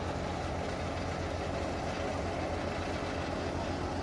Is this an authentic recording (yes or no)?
yes